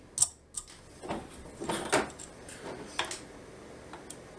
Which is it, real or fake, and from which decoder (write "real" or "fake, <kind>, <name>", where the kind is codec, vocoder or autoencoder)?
real